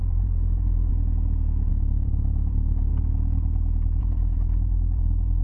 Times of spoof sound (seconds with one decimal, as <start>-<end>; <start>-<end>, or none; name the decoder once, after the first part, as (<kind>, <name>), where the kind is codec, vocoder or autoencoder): 0.0-0.9 (vocoder, Vocos); 1.7-2.9; 4.0-5.4